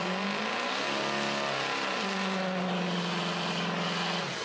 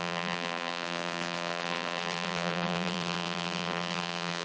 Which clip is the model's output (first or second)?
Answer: second